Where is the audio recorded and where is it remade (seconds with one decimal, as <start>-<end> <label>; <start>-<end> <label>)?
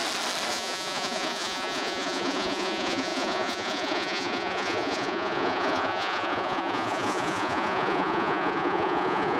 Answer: 0.0-0.5 recorded; 0.5-9.4 remade